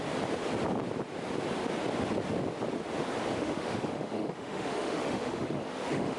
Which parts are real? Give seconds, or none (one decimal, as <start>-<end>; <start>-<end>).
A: 0.0-3.4